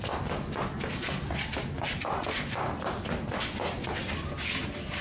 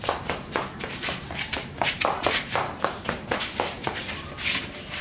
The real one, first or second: first